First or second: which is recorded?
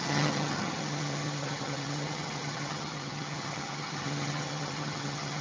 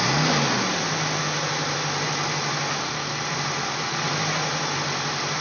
second